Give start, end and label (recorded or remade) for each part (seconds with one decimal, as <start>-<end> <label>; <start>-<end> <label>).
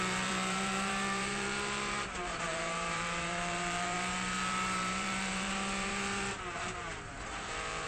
0.0-7.9 remade